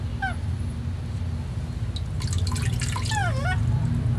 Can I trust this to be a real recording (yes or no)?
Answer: yes